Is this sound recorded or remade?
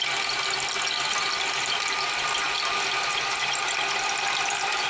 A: recorded